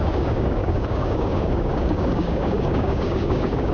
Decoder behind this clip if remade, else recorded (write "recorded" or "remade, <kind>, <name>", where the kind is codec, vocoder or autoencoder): remade, codec, DAC